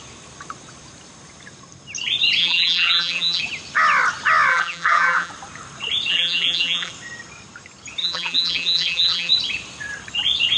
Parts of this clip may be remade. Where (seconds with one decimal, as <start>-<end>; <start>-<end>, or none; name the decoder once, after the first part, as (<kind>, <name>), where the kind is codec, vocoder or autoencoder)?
2.4-3.4 (vocoder, BigVGAN v2); 4.5-5.3; 6.1-6.9; 8.0-9.3